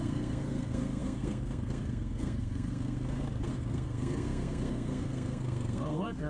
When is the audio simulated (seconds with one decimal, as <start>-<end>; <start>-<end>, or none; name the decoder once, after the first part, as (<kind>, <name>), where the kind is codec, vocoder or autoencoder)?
0.0-6.3 (codec, SNAC)